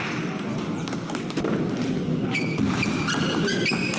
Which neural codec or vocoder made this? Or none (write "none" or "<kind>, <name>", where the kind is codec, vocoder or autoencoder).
none